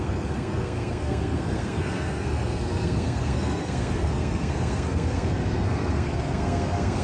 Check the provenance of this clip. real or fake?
fake